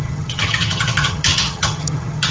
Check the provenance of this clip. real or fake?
fake